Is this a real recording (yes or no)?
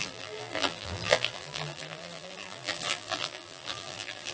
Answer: no